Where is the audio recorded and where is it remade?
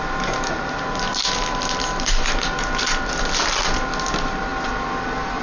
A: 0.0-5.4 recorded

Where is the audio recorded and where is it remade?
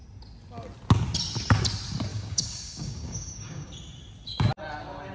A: 0.0-2.1 recorded; 2.1-3.7 remade; 3.7-5.1 recorded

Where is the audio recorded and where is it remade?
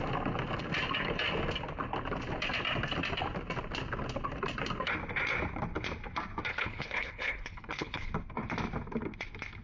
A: 0.0-6.5 recorded; 6.5-8.1 remade; 8.1-9.6 recorded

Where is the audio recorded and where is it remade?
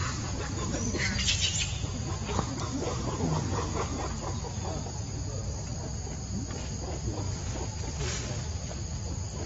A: 0.0-0.5 remade; 0.5-9.5 recorded